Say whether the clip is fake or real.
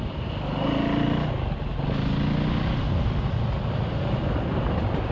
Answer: real